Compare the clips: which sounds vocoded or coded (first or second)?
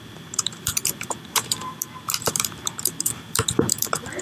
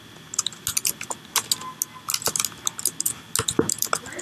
first